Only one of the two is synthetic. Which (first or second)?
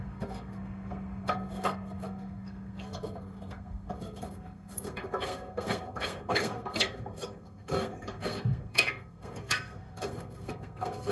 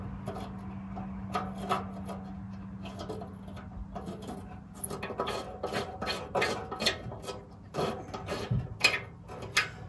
first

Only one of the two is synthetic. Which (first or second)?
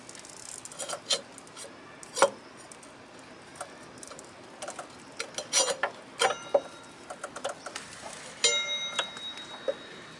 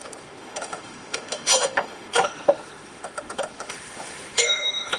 second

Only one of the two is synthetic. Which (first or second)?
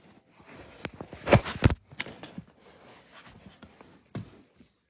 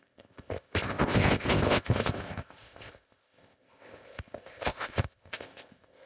second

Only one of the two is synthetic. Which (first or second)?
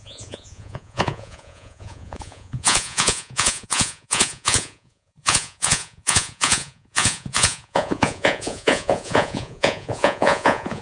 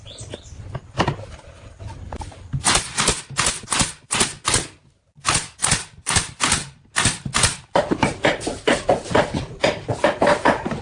first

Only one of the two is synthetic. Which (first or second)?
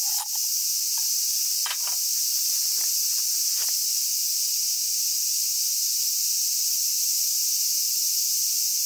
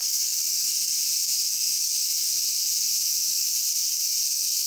second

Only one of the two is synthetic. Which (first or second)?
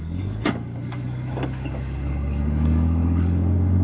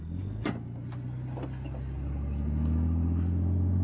first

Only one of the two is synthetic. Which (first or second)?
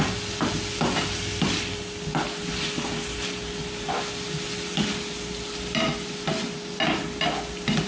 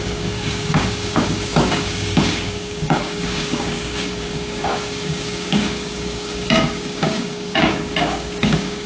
second